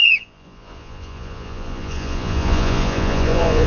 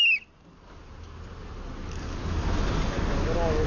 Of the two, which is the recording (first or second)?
second